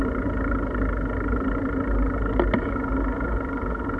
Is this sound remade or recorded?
recorded